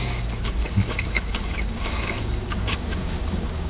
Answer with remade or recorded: remade